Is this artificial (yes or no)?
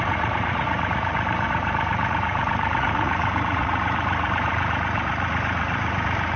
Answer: yes